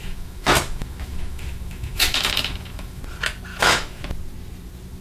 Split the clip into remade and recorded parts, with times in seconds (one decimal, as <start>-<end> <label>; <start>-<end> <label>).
0.0-3.0 remade; 3.0-3.5 recorded; 3.5-4.1 remade; 4.1-5.0 recorded